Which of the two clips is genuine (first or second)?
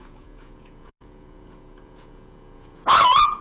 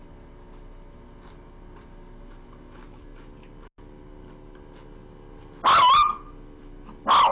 second